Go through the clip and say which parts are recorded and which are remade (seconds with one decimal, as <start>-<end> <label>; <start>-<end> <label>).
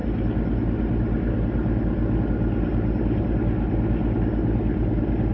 0.0-5.3 recorded